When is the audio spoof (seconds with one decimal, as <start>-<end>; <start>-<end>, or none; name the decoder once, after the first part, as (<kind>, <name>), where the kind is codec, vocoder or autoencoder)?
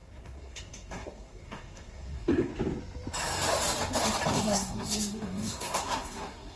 0.0-2.5 (codec, SNAC); 4.3-6.6